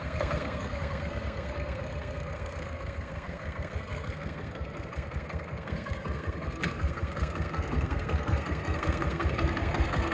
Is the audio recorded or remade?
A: remade